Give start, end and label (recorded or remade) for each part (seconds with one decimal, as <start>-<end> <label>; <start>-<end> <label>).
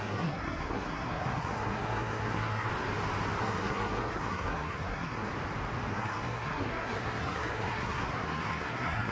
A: 0.0-2.7 remade; 2.7-3.4 recorded; 3.4-5.3 remade; 5.3-5.9 recorded; 5.9-9.1 remade